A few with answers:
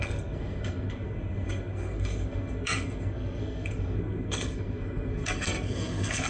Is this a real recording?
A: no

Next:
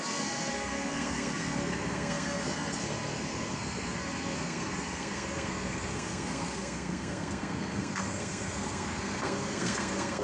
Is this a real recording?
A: no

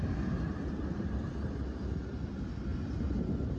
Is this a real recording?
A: yes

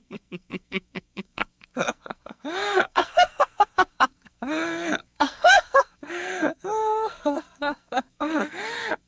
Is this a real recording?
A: no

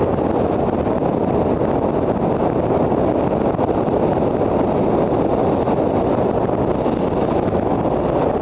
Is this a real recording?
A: yes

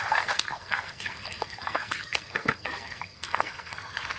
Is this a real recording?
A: no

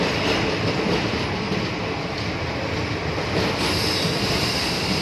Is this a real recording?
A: yes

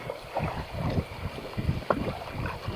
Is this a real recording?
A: yes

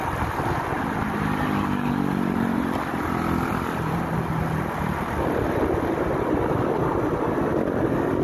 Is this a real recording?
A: yes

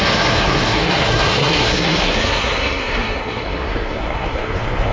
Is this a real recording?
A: no